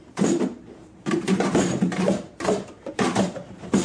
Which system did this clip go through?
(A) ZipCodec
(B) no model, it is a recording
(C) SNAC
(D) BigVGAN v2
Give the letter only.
D